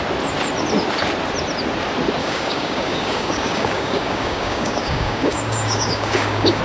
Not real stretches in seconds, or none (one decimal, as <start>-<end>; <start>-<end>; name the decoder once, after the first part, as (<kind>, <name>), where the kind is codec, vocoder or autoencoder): 2.2-6.6 (codec, DAC)